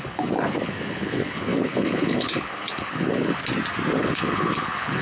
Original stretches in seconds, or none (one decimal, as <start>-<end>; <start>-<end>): 3.4-4.0